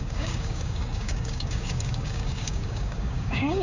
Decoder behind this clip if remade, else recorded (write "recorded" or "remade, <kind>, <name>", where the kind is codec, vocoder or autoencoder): remade, codec, DAC